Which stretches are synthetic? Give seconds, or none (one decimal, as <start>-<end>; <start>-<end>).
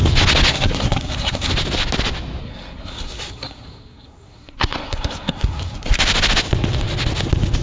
0.5-1.5; 2.4-6.0